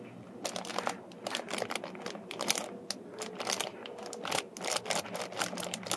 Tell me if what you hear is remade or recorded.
recorded